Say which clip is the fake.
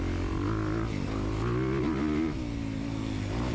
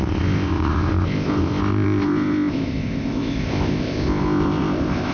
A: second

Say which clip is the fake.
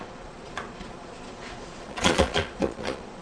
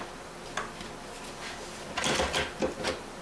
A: first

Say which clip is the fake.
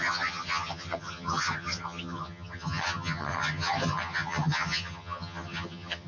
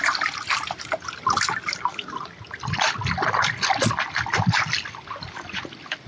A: first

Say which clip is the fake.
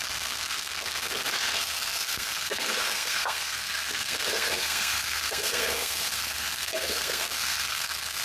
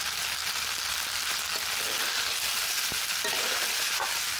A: first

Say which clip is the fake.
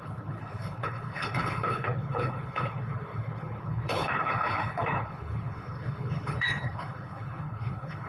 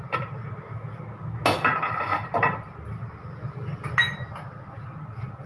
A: first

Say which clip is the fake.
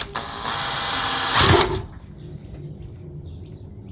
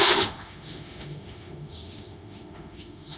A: second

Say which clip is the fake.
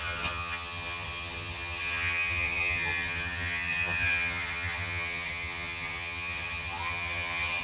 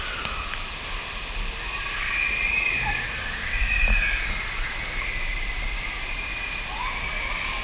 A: first